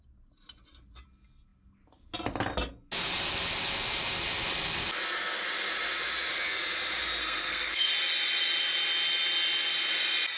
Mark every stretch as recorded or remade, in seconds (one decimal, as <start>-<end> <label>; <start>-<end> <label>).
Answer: 0.0-7.2 recorded; 7.2-7.9 remade; 7.9-10.4 recorded